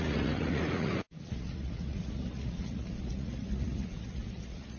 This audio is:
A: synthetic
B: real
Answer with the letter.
A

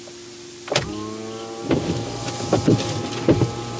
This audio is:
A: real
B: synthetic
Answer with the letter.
A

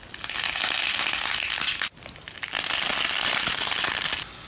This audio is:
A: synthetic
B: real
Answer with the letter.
B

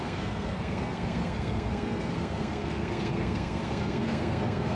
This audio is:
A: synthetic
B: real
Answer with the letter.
A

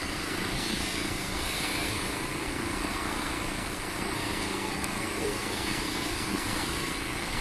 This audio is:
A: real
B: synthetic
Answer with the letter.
B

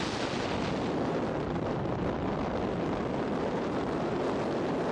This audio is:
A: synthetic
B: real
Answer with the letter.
B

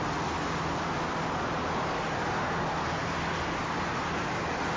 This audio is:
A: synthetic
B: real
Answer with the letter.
B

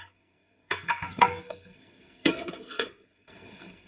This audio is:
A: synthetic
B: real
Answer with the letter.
A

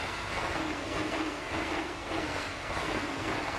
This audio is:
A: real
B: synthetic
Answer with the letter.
B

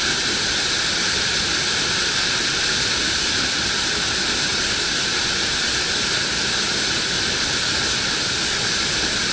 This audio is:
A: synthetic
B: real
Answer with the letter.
B